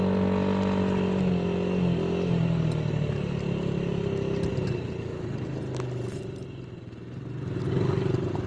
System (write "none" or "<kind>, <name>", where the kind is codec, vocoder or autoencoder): none